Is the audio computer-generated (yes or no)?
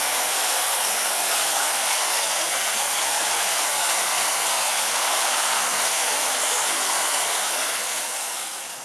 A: yes